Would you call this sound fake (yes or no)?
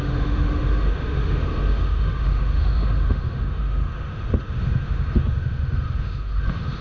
yes